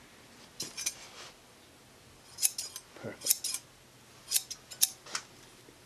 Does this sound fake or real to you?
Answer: real